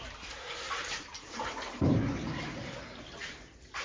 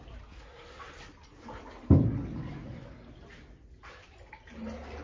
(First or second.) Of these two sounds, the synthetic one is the first